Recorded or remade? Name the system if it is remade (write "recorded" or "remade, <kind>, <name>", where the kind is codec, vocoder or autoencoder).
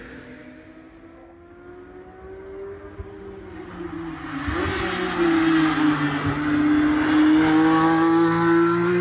recorded